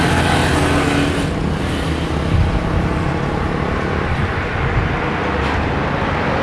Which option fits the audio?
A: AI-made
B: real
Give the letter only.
B